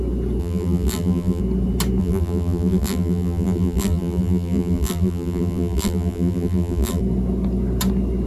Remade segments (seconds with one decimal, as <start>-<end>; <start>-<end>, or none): 0.4-1.4; 2.0-7.0